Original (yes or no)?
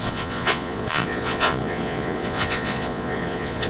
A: no